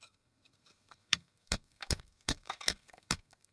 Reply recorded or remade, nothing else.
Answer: remade